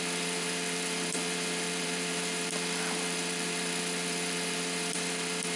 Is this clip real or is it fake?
fake